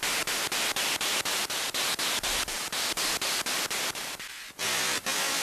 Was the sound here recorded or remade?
remade